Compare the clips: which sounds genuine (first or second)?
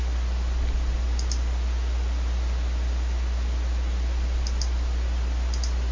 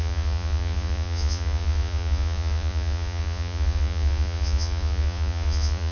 first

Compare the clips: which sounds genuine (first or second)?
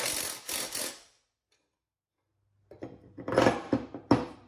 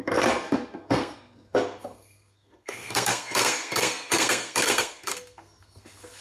first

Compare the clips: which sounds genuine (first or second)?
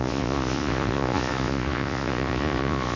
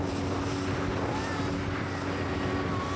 second